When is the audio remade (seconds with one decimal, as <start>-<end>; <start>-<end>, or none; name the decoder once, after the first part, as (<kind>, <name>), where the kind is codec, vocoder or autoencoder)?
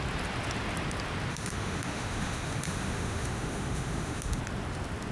1.3-4.4 (autoencoder, DAC-VAE)